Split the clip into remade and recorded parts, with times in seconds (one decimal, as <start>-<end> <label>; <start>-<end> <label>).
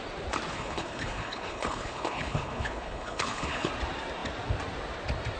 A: 0.0-0.5 recorded; 0.5-3.7 remade; 3.7-5.4 recorded